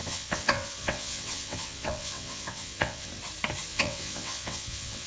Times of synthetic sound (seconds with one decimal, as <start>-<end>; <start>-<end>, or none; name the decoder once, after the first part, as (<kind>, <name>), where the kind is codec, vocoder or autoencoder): 0.0-3.1 (vocoder, WaveNeXt); 3.7-5.1